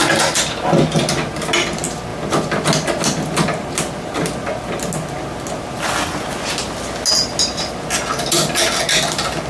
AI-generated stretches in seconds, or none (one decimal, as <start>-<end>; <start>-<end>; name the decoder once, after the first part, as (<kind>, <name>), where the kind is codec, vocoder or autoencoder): none